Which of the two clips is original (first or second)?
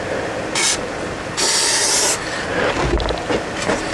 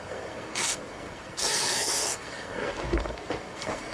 first